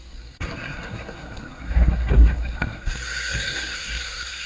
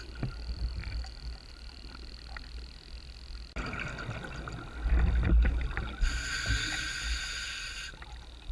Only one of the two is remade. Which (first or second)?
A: first